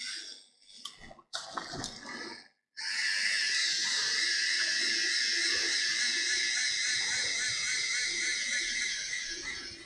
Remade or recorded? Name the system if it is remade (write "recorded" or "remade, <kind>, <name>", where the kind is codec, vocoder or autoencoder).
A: recorded